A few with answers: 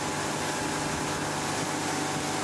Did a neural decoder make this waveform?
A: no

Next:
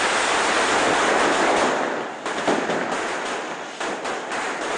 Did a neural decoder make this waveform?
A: no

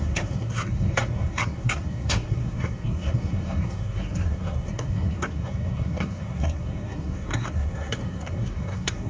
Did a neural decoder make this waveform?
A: yes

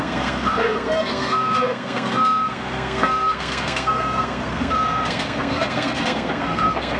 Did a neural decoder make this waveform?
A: yes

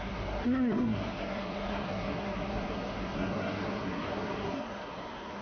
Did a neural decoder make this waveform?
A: yes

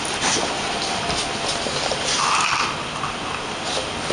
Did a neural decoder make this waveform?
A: no